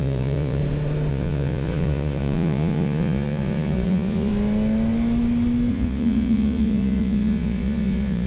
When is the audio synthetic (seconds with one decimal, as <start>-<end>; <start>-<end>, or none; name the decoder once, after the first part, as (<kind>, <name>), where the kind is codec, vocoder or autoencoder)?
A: 0.0-0.6 (vocoder, Vocos); 1.1-4.3; 5.7-8.3